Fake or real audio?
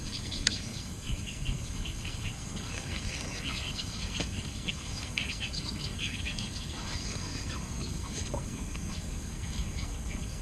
fake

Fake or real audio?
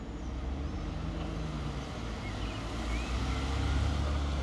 real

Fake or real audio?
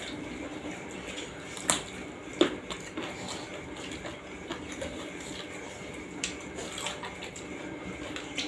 real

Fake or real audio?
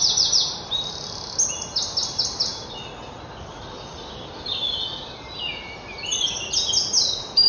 real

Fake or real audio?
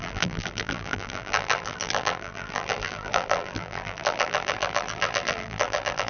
fake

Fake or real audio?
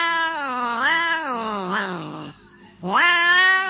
fake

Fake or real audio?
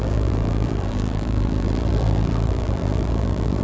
fake